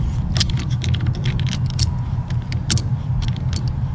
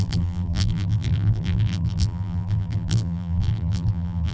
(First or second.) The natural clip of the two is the first